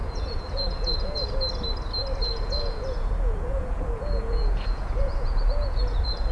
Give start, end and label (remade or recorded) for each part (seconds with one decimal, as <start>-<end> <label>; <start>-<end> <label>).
0.0-1.3 remade; 1.3-2.3 recorded; 2.3-6.3 remade

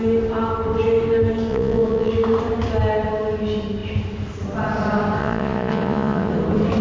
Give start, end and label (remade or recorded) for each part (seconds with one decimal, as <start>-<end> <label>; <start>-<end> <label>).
0.0-1.5 recorded; 1.5-2.1 remade; 2.1-5.2 recorded; 5.2-6.3 remade; 6.3-6.8 recorded